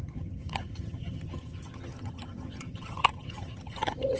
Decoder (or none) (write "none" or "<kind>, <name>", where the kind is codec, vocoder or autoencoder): vocoder, HiFi-GAN